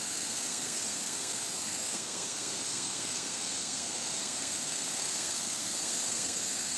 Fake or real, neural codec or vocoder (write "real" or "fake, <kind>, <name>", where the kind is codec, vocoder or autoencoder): fake, codec, SNAC